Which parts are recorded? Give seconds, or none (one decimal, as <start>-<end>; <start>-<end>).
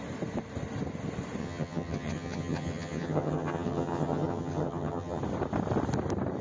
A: 0.0-1.4; 5.2-6.4